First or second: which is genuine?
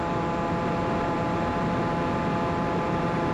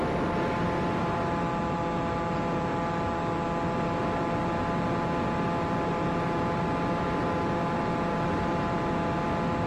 second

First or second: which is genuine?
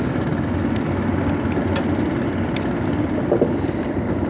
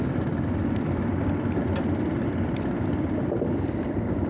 first